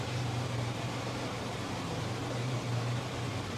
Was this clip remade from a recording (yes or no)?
yes